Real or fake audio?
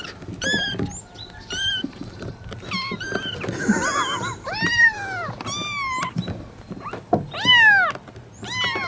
real